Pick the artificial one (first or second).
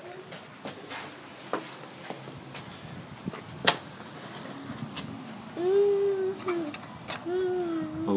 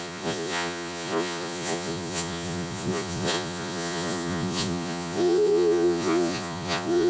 second